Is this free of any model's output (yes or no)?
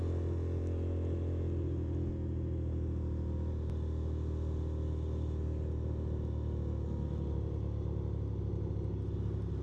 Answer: yes